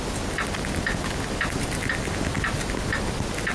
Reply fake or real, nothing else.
real